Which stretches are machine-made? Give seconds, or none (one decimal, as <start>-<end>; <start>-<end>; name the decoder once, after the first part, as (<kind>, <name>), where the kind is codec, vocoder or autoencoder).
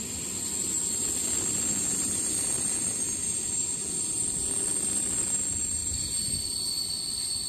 none